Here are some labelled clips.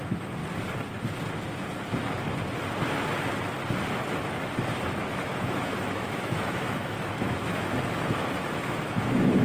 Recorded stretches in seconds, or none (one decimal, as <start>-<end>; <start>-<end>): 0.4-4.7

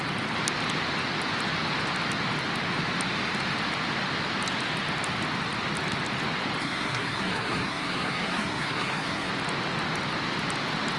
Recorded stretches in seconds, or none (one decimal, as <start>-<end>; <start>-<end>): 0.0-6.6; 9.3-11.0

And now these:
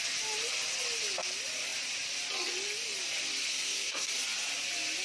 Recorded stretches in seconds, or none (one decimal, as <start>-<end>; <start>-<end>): 0.0-3.5; 4.1-5.0

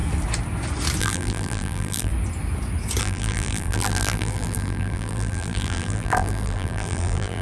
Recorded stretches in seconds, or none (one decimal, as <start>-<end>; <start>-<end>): 0.0-1.0; 2.1-3.0

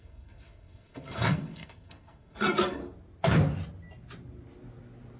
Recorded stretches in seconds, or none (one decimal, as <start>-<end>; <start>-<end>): 2.8-5.2